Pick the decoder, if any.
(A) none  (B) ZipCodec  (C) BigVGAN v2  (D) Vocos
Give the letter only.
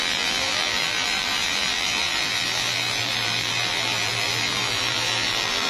C